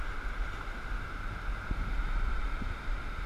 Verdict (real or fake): real